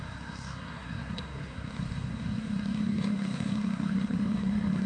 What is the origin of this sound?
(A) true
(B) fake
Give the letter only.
B